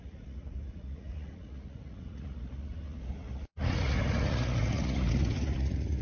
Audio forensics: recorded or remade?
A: remade